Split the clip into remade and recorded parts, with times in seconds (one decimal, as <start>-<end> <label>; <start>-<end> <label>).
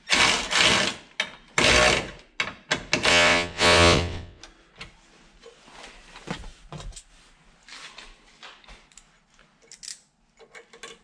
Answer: 0.0-3.1 recorded; 3.1-4.4 remade; 4.4-11.0 recorded